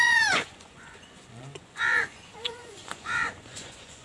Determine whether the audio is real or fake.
fake